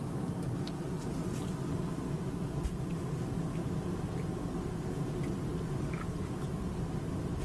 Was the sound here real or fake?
real